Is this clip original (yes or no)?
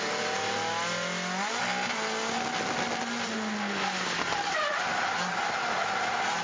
yes